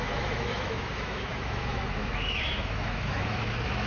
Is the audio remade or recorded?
remade